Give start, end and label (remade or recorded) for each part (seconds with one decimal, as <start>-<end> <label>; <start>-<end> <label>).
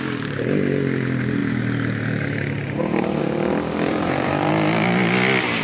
0.0-3.9 recorded; 3.9-4.5 remade; 4.5-5.6 recorded